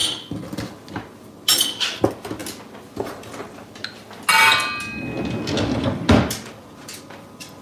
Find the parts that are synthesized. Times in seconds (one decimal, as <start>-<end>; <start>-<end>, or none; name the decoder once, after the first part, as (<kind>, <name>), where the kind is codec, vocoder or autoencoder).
none